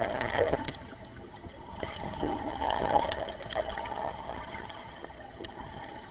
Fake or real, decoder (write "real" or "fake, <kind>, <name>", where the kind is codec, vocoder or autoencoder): fake, vocoder, HiFi-GAN